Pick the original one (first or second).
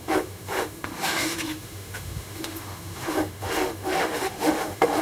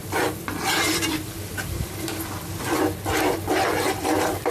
second